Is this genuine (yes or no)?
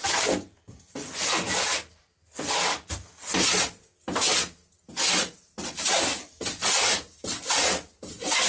yes